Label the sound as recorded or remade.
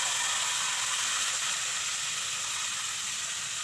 recorded